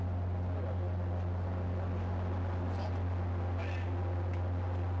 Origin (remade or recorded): recorded